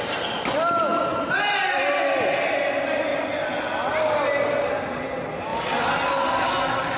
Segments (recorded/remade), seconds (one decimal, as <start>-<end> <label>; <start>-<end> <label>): 0.0-5.5 recorded; 5.5-6.1 remade; 6.1-7.0 recorded